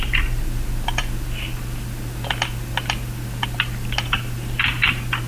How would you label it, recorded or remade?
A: recorded